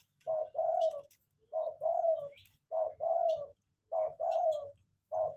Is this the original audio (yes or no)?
no